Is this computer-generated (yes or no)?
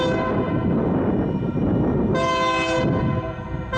no